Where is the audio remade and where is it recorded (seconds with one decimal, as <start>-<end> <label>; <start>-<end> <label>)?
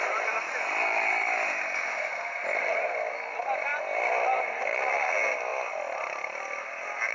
0.0-7.1 recorded